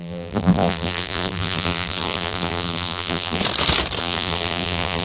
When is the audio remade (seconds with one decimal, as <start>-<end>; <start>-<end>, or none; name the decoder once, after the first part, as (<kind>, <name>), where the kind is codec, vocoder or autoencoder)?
0.0-3.4 (vocoder, BigVGAN v2); 4.0-5.0